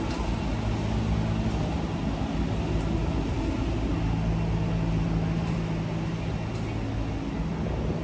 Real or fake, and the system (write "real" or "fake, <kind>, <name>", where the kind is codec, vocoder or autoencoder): real